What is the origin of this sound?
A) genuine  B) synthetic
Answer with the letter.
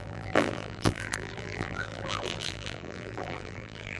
B